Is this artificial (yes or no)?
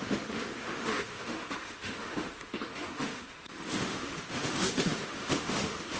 yes